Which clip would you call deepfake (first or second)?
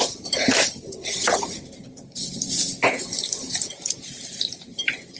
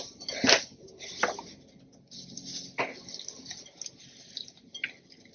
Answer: first